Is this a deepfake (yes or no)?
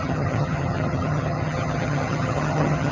yes